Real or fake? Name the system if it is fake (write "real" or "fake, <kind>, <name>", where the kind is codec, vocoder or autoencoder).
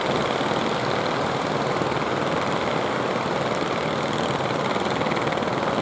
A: real